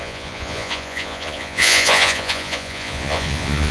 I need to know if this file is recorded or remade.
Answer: remade